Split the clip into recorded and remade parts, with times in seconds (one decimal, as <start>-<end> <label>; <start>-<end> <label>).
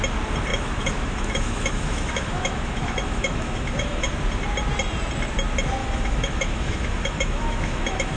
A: 0.0-0.5 recorded; 0.5-4.1 remade; 4.1-5.8 recorded; 5.8-8.2 remade